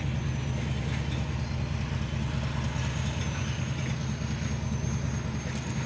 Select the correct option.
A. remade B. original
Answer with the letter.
B